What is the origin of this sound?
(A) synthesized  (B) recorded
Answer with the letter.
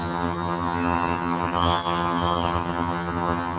A